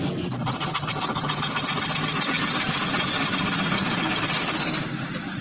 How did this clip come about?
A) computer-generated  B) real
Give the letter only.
B